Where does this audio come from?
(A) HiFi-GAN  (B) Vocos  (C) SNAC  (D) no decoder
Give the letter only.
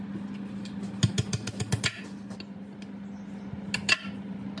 D